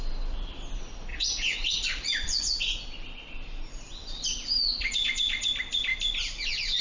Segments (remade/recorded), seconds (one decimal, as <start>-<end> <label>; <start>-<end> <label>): 0.0-1.1 recorded; 1.1-2.7 remade; 2.7-4.0 recorded; 4.0-5.5 remade; 5.5-6.8 recorded